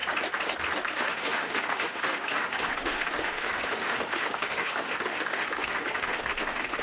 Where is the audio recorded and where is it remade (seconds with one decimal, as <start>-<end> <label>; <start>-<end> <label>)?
0.0-0.9 recorded; 0.9-6.8 remade